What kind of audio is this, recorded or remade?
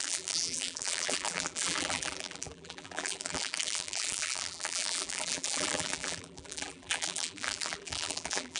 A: remade